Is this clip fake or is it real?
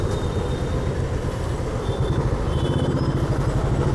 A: real